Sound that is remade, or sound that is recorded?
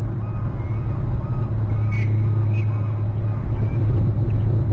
recorded